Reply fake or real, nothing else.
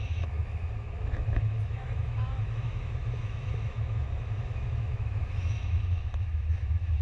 fake